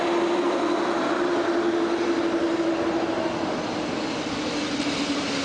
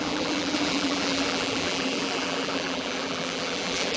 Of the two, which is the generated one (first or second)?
second